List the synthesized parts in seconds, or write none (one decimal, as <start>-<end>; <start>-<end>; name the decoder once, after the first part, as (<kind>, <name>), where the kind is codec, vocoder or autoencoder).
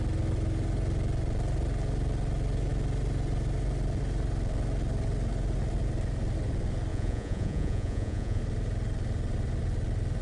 6.9-8.4 (vocoder, Vocos)